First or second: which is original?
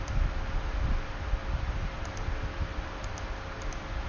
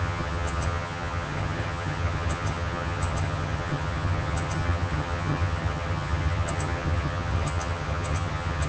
first